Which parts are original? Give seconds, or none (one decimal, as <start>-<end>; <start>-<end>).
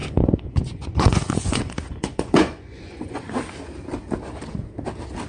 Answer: 3.2-5.3